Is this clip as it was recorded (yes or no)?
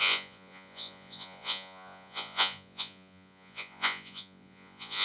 no